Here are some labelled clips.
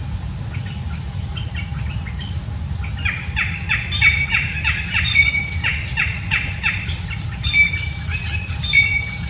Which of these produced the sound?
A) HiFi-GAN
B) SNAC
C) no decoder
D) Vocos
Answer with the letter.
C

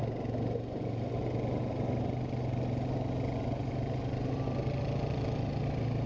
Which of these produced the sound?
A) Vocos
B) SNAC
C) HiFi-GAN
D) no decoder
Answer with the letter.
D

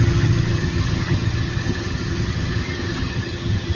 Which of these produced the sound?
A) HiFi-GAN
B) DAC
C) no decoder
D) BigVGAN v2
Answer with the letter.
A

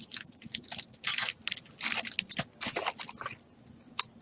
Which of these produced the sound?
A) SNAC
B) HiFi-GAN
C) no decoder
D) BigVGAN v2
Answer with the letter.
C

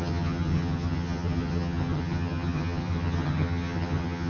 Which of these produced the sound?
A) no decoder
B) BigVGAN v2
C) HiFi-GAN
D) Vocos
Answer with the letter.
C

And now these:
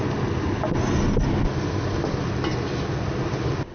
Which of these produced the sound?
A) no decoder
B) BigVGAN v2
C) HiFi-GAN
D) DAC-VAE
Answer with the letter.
A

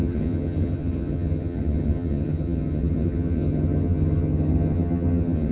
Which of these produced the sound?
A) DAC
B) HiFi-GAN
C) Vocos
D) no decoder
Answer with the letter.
B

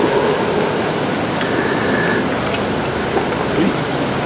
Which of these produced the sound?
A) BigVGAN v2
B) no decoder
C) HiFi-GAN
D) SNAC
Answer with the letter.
B